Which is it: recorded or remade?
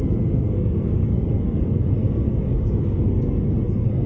remade